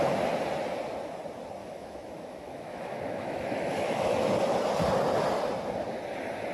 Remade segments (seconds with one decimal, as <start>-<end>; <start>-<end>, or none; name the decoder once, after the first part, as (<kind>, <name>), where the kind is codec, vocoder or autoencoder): 1.6-4.3 (autoencoder, DAC-VAE)